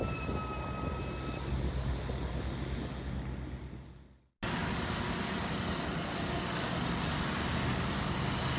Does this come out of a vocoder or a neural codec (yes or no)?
no